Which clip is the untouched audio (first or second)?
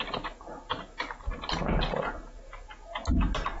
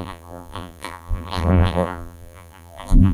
first